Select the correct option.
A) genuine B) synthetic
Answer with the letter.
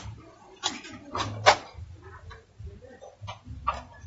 A